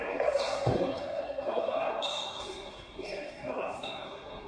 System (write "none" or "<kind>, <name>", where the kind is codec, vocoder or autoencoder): codec, SNAC